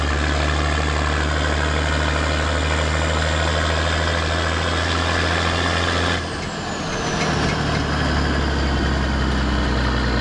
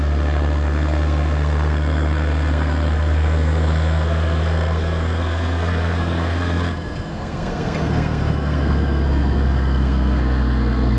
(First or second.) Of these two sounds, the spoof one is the second